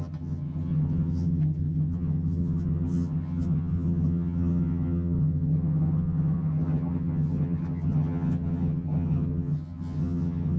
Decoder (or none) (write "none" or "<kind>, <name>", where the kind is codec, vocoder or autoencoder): vocoder, HiFi-GAN